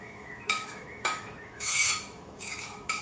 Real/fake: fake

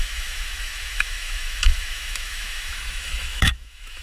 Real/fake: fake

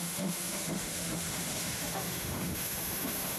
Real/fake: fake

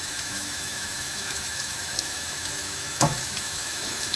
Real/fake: fake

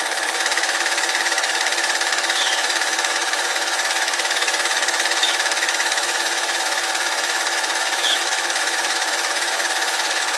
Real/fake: fake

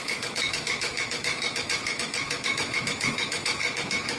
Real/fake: fake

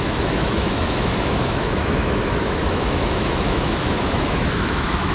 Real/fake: fake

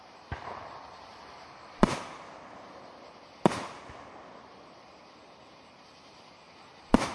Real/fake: real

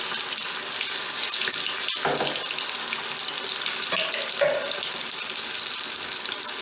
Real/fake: real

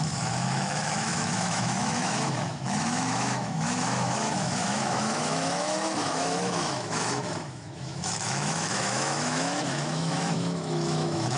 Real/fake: fake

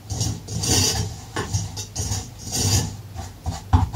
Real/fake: real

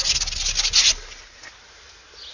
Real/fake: real